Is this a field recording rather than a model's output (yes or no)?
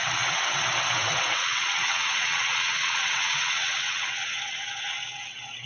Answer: no